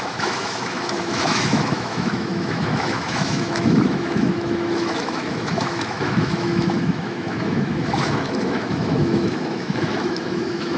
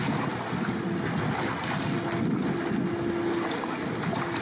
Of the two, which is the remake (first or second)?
first